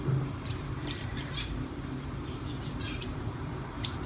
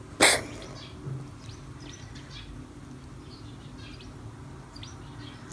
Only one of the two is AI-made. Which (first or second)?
first